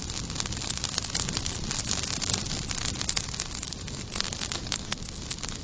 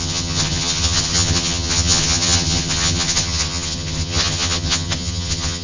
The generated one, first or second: second